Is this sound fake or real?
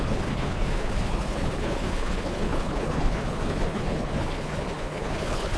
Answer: fake